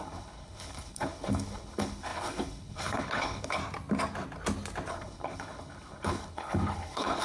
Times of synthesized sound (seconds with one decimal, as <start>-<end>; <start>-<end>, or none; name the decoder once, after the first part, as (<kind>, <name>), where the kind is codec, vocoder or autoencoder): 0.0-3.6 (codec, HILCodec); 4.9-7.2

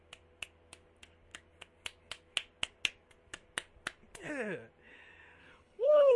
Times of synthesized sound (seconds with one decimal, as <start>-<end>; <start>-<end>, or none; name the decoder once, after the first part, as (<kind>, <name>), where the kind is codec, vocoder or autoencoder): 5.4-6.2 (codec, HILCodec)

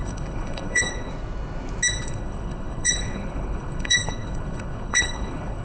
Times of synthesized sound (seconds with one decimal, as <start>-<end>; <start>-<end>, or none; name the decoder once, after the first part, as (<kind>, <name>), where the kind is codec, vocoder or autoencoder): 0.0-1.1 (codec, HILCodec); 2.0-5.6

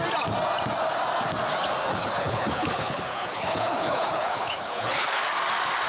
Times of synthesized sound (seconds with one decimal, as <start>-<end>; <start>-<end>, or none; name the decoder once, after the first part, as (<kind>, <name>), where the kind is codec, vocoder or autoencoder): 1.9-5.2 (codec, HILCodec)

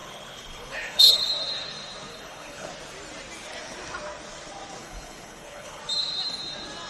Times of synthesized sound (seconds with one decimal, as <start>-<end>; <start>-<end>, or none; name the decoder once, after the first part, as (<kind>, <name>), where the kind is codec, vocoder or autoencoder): 0.0-1.3 (codec, HILCodec); 2.1-2.7; 4.8-5.8

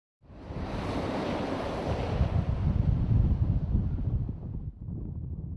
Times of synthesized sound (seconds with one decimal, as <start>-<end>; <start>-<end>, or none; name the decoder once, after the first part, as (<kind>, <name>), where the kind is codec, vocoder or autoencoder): none

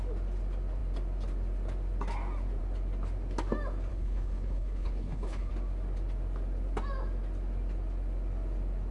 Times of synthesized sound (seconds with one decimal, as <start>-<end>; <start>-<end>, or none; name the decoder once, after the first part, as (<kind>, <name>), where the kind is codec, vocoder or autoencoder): 3.9-5.5 (codec, HILCodec)